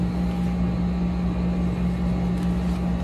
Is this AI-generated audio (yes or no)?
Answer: no